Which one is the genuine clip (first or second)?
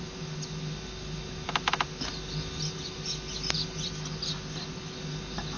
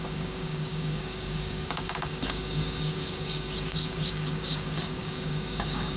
first